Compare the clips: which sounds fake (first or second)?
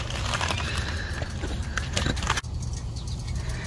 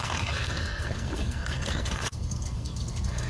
second